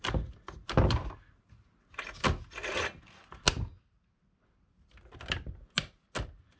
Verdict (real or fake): real